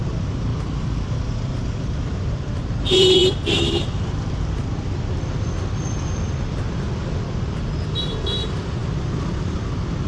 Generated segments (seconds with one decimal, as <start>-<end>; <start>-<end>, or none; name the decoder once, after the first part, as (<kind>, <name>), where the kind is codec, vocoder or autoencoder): 0.0-10.1 (vocoder, BigVGAN v2)